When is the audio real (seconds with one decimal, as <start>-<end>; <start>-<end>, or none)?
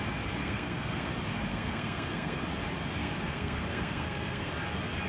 0.0-0.4; 1.1-1.5; 2.4-3.0; 4.5-5.1